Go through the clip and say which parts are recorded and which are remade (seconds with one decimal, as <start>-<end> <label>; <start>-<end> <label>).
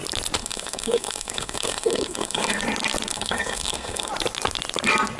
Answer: 0.0-0.4 recorded; 0.4-2.6 remade; 2.6-3.1 recorded; 3.1-4.1 remade; 4.1-5.2 recorded